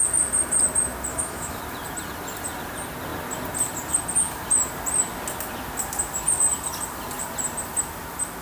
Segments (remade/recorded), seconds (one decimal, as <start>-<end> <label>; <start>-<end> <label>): 0.0-1.1 recorded; 1.1-1.6 remade; 1.6-8.4 recorded